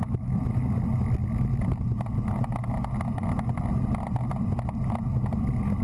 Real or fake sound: real